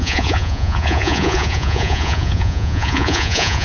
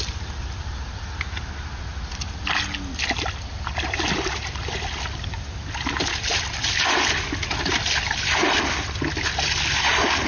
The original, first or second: second